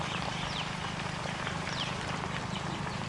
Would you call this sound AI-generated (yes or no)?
yes